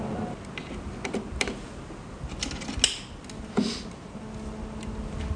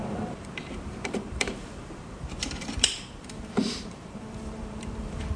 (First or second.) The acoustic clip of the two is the first